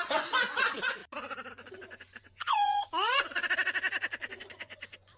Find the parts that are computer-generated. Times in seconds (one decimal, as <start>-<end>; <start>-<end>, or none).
0.0-1.0; 1.5-3.4; 4.3-5.2